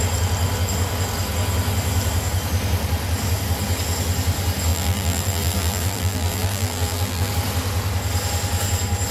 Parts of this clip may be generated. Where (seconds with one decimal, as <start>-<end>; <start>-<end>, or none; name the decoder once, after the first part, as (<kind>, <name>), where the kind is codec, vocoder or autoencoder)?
4.7-7.3 (vocoder, BigVGAN v2)

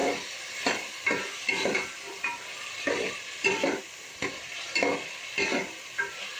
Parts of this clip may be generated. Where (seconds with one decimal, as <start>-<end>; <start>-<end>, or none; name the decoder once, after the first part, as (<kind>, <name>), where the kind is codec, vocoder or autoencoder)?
0.0-3.8 (vocoder, BigVGAN v2)

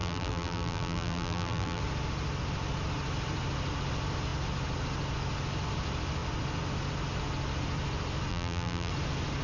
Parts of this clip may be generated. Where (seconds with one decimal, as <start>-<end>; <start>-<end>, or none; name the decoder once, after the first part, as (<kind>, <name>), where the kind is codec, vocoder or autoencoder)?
0.0-1.8 (vocoder, BigVGAN v2); 8.3-8.9

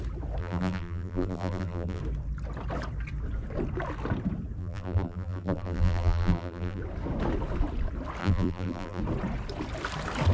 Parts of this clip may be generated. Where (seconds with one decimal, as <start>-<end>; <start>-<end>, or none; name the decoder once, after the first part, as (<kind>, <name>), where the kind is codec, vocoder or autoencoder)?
0.4-2.0 (vocoder, BigVGAN v2); 4.6-6.8; 8.2-9.0

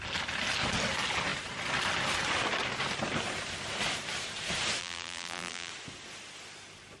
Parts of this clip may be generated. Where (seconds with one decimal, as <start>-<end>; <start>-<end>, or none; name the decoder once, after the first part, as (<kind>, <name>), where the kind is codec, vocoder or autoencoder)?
4.8-5.7 (vocoder, BigVGAN v2)

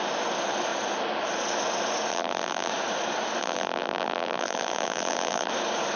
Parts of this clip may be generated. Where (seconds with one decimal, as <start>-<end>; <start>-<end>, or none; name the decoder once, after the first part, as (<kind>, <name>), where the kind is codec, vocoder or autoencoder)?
2.1-2.7 (vocoder, BigVGAN v2); 3.4-5.5